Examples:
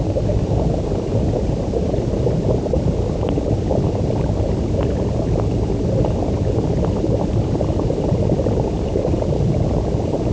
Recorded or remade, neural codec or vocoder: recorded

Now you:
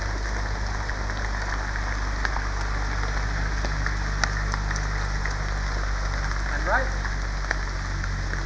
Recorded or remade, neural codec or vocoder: recorded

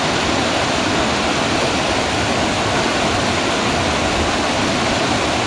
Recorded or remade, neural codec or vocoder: recorded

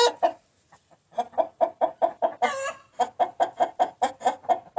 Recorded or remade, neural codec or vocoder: recorded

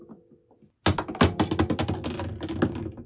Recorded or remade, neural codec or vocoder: recorded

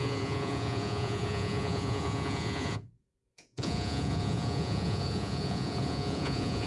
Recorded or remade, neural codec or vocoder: remade, vocoder, Vocos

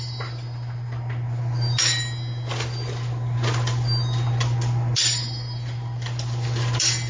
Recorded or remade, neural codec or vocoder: recorded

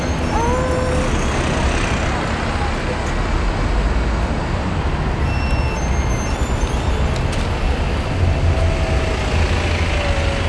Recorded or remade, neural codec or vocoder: recorded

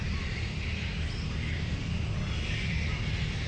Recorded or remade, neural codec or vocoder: recorded